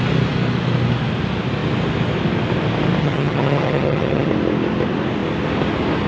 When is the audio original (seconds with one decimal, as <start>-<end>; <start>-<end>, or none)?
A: 0.0-3.0; 4.3-6.1